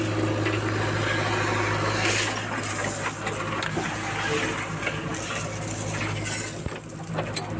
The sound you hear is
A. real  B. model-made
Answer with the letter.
A